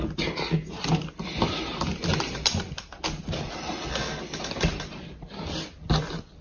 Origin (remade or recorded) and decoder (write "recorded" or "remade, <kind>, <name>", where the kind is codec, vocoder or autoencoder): recorded